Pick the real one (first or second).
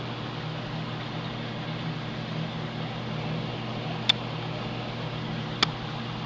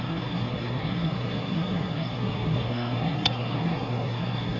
first